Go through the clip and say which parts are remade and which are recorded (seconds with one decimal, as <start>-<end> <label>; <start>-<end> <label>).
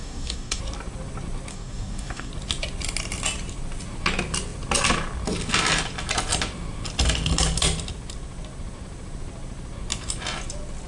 0.0-0.6 remade; 0.6-1.5 recorded; 1.5-2.3 remade; 2.3-10.9 recorded